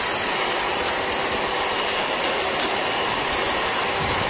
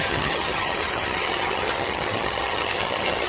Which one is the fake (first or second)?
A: second